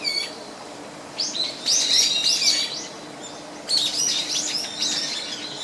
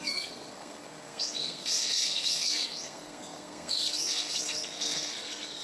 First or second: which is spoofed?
second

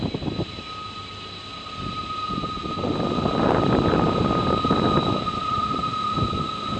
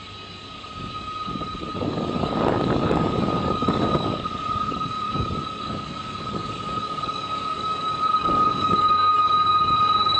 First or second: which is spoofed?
second